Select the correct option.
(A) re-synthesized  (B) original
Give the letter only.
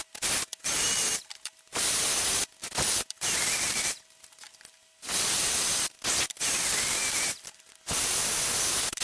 B